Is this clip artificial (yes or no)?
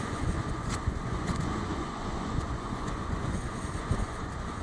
yes